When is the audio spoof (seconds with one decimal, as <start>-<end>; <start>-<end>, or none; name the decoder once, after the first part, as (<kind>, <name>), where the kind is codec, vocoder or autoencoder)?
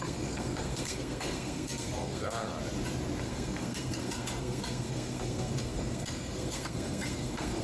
0.0-2.5 (codec, SNAC); 3.2-7.6